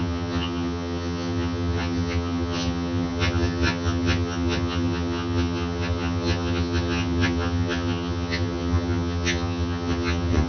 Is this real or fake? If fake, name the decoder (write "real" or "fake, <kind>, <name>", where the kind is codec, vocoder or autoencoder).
fake, vocoder, HiFi-GAN